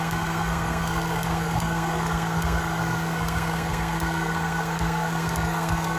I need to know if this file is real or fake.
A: fake